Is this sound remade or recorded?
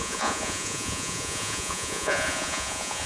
remade